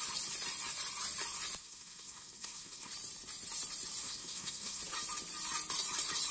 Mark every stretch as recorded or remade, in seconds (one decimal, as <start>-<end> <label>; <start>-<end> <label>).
0.0-1.6 recorded; 1.6-2.9 remade; 2.9-4.0 recorded; 4.0-4.8 remade; 4.8-6.3 recorded